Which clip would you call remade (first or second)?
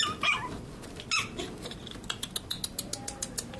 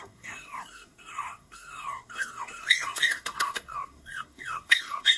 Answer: second